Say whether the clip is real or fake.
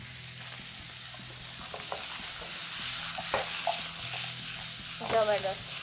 real